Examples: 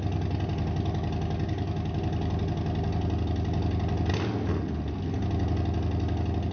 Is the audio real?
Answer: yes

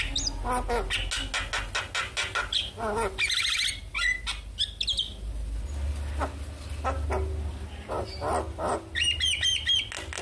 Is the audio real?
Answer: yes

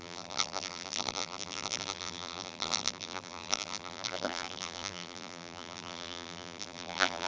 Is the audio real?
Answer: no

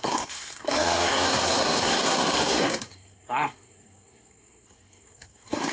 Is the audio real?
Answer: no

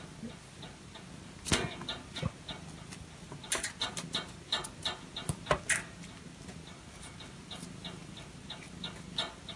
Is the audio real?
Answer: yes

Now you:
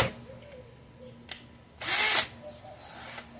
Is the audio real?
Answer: yes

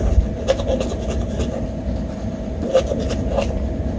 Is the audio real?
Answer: yes